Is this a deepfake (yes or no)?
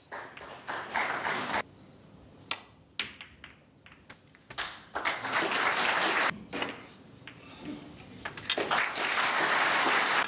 no